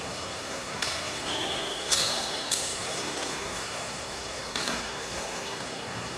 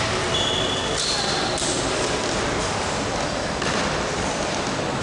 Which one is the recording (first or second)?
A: second